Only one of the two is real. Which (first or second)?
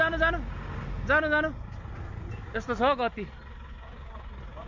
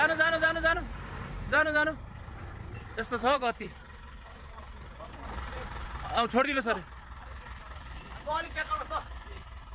first